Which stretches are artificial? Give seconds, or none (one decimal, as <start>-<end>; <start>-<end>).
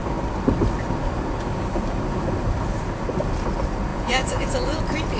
3.9-4.8